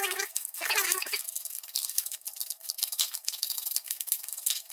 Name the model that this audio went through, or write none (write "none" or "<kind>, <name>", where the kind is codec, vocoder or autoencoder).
codec, SNAC